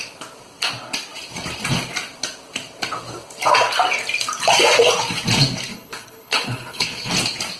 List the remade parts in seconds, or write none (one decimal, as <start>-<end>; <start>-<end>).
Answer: 5.7-7.1